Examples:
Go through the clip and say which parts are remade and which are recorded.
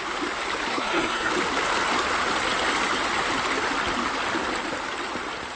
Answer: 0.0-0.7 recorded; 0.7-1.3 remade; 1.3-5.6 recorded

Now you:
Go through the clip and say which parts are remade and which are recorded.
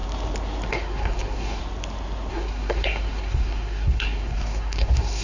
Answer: 0.0-0.7 recorded; 0.7-1.6 remade; 1.6-2.3 recorded; 2.3-5.2 remade